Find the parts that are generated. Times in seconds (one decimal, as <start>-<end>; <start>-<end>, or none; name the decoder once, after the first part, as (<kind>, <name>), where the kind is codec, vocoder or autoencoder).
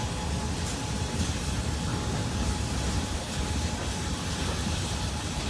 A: none